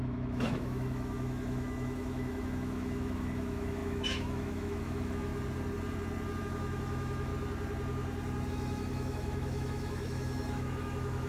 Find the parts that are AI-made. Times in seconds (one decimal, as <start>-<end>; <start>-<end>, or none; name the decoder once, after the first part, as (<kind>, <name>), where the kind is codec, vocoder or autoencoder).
0.0-5.3 (autoencoder, DAC-VAE); 6.4-7.3; 8.5-11.3